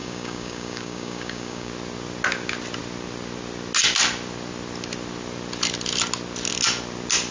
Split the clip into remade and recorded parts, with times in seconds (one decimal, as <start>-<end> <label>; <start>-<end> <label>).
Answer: 0.0-1.7 remade; 1.7-7.3 recorded